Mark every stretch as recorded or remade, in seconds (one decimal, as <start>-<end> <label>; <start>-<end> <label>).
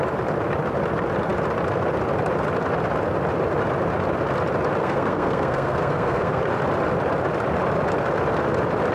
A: 0.0-4.8 recorded; 4.8-6.4 remade; 6.4-8.9 recorded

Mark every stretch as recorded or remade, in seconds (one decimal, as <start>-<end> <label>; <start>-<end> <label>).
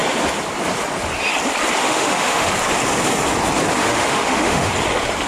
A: 0.0-1.8 recorded; 1.8-2.5 remade; 2.5-3.8 recorded; 3.8-4.7 remade; 4.7-5.3 recorded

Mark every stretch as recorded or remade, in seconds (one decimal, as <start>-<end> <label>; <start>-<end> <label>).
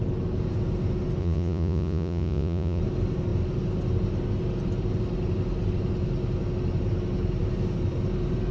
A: 0.0-1.2 recorded; 1.2-2.8 remade; 2.8-8.5 recorded